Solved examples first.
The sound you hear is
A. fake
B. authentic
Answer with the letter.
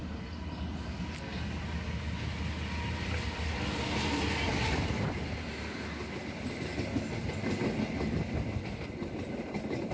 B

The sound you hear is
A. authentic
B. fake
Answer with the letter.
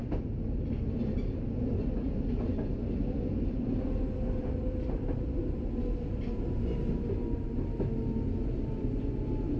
A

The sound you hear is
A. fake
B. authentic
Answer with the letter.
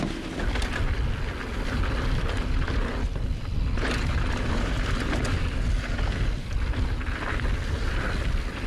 B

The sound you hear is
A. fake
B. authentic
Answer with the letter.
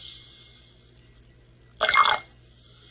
B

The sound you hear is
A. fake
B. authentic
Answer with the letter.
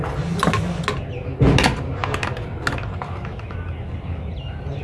B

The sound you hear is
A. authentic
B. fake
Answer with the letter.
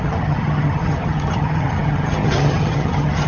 B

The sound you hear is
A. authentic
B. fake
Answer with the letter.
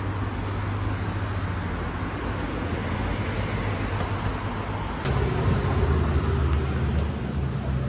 A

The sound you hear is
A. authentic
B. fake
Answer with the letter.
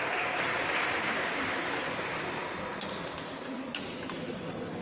A